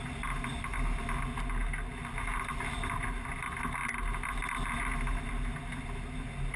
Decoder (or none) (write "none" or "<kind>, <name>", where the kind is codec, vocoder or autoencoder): none